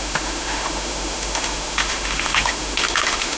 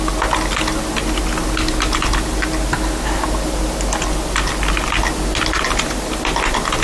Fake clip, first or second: first